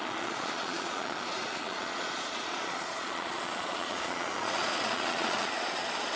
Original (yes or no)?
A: no